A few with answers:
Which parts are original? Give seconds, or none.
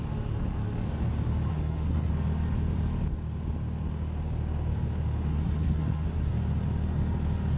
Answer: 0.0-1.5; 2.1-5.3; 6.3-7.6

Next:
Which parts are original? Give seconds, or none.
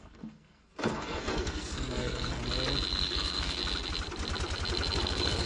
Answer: 2.4-2.9; 3.6-5.0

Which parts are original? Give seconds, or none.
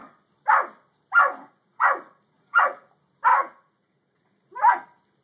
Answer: 0.0-1.4; 2.9-3.3; 4.5-5.2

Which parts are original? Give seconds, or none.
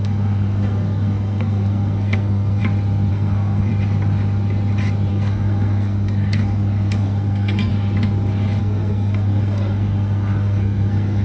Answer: 2.6-3.1; 3.7-5.1; 7.7-8.6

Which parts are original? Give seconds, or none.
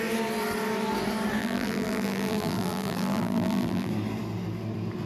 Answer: 0.0-1.4; 3.9-5.1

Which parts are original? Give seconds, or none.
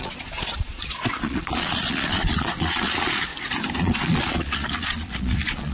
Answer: 3.3-3.8